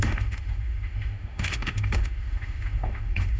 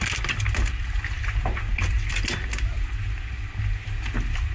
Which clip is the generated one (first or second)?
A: first